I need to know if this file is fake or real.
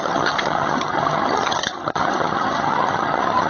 fake